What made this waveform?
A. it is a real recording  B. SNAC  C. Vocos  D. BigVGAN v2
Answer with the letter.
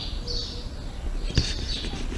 A